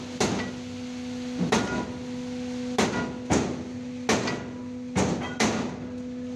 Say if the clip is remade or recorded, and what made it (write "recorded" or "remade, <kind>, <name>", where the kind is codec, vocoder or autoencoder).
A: recorded